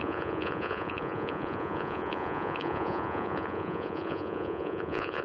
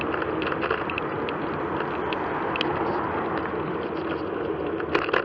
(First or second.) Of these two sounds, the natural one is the second